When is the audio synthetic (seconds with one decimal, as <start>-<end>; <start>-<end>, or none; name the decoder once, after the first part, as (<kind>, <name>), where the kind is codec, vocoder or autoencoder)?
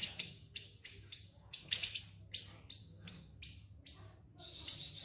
0.0-2.0 (codec, DAC); 2.8-3.4